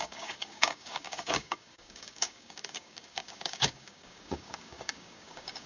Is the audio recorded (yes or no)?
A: no